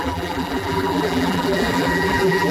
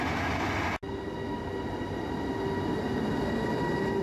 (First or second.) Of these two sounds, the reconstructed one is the first